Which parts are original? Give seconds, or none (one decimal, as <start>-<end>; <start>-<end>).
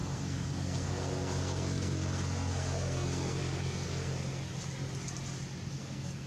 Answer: 4.5-5.7